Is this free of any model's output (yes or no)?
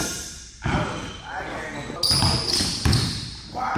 yes